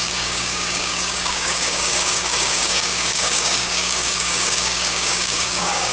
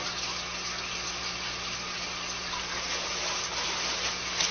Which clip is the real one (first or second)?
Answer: second